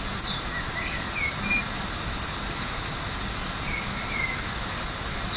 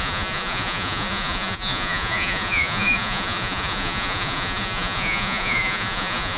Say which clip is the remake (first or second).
second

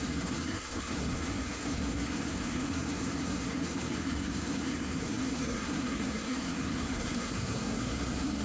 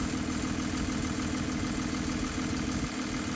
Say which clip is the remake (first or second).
first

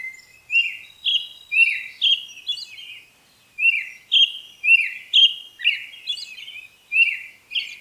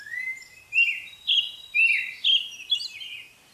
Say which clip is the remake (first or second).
second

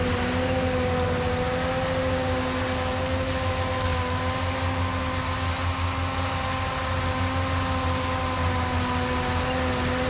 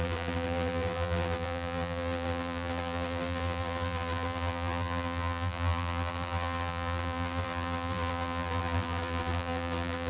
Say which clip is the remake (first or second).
second